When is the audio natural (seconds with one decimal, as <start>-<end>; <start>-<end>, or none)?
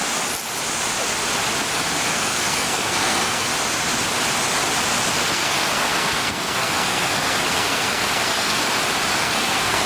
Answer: 0.0-2.1; 3.5-5.1; 8.6-9.2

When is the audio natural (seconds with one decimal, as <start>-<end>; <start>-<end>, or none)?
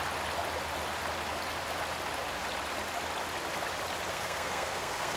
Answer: 0.0-4.1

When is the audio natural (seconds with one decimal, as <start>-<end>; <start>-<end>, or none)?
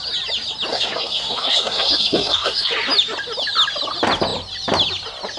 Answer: 0.0-0.7; 2.7-5.4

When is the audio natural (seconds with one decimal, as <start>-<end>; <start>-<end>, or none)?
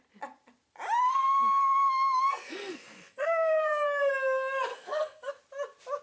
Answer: 0.0-1.6; 4.1-4.7; 5.3-6.0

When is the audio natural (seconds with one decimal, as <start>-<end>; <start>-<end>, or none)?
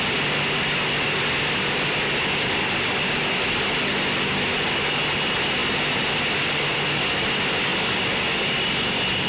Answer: 0.0-9.3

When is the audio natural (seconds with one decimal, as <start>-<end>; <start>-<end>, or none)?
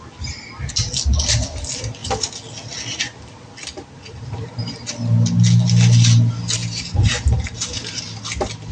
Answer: 0.0-6.6; 8.0-8.7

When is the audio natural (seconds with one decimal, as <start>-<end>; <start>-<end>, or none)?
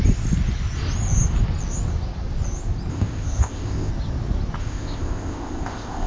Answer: 0.0-2.9; 3.9-4.6